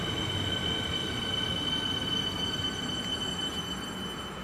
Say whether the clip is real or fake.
real